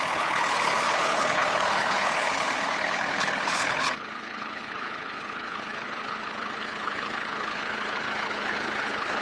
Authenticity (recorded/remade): remade